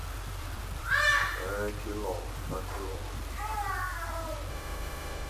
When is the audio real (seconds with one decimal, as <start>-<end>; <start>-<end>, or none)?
0.0-4.5